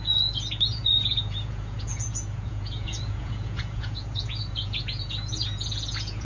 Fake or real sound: fake